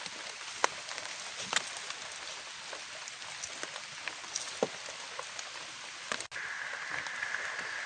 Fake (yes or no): no